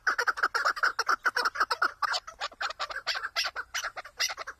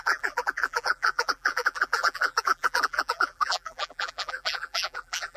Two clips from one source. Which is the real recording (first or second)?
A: first